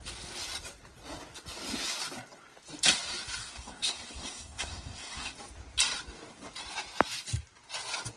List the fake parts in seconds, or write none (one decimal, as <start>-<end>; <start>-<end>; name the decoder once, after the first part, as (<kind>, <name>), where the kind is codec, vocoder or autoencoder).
3.4-5.3 (codec, SNAC)